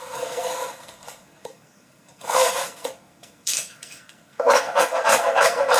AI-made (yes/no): yes